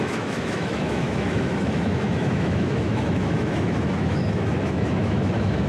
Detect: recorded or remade remade